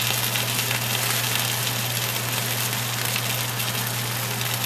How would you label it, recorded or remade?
recorded